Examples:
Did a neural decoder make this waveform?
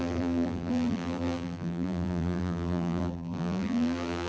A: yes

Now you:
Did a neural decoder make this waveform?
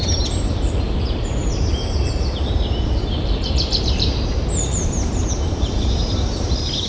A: yes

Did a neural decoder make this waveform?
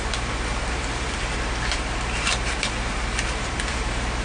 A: yes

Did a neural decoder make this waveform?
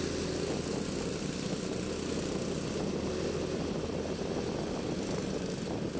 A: no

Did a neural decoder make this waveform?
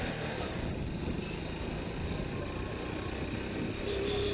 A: no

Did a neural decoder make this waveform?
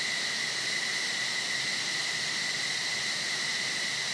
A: no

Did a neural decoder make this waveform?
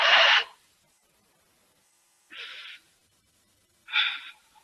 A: yes